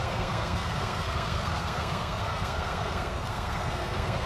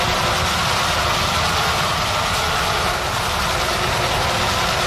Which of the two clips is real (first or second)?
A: second